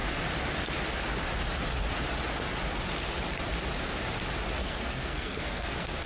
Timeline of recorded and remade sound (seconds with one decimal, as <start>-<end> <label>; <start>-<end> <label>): 0.0-4.6 recorded; 4.6-6.1 remade